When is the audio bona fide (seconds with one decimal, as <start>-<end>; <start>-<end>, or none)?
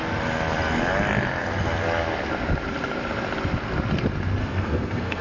0.0-4.4